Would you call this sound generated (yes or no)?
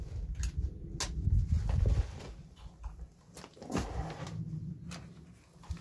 no